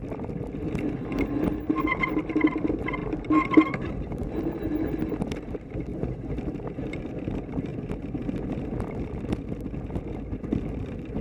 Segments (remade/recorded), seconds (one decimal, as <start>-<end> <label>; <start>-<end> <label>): 0.0-3.0 recorded; 3.0-4.4 remade; 4.4-5.9 recorded; 5.9-7.1 remade; 7.1-11.2 recorded